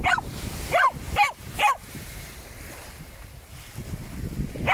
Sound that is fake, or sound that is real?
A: fake